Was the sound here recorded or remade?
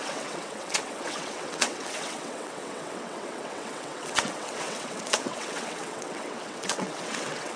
remade